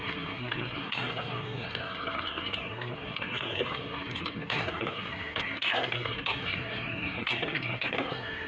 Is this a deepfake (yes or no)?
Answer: yes